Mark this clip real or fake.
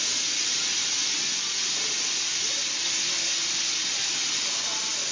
real